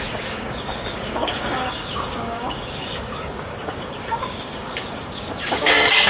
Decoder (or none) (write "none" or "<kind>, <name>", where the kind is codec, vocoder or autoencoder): codec, DAC